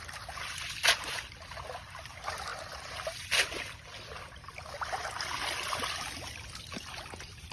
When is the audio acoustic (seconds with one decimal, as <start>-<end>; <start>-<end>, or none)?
0.0-7.5